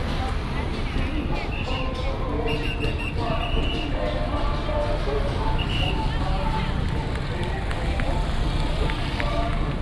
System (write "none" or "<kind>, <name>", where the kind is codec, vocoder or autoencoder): none